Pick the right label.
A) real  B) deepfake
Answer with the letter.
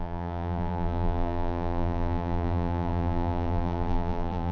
B